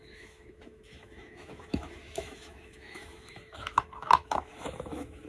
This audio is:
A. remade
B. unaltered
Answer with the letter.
A